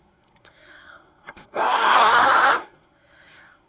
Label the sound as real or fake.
fake